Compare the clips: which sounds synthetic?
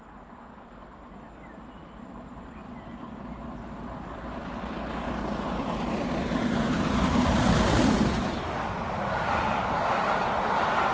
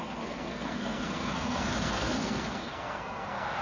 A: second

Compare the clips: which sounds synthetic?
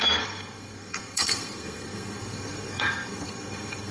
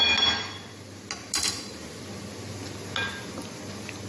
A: first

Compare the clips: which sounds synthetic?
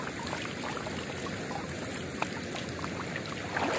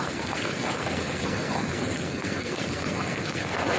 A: second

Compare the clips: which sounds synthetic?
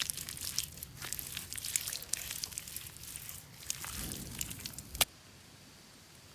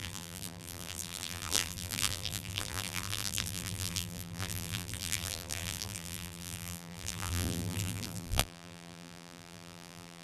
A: second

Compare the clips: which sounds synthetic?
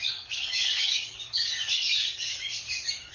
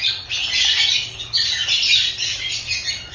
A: first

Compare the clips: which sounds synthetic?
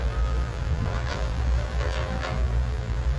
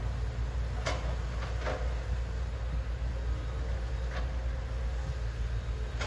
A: first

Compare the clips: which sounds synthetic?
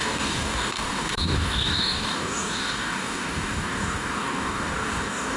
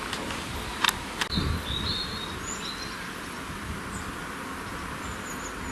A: first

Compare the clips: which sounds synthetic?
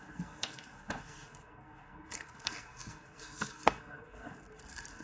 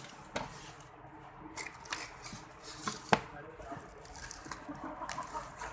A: first